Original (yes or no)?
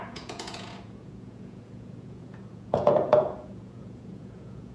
no